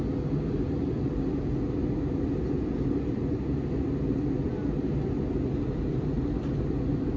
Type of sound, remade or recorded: recorded